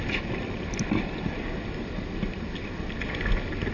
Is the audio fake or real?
real